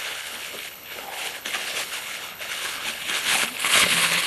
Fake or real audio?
fake